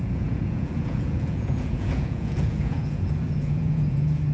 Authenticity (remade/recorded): remade